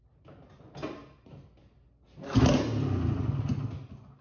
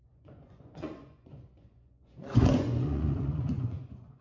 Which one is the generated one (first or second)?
second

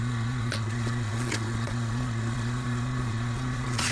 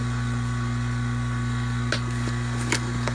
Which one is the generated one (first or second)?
first